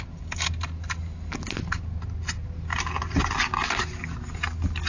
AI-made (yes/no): no